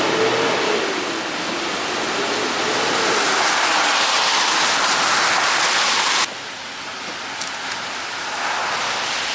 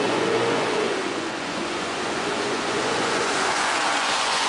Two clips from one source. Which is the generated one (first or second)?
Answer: second